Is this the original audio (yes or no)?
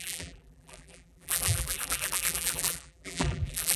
no